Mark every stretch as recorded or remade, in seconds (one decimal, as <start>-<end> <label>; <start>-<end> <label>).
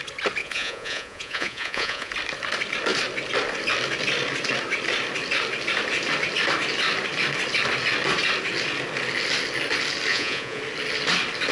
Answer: 0.0-0.4 recorded; 0.4-2.1 remade; 2.1-10.1 recorded; 10.1-10.6 remade; 10.6-11.5 recorded